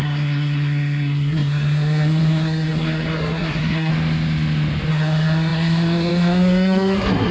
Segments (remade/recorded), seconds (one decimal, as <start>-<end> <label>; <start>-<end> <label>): 0.0-3.9 remade; 3.9-4.9 recorded; 4.9-7.3 remade